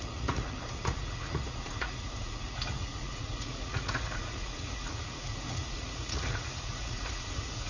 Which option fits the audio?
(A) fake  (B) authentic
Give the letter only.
A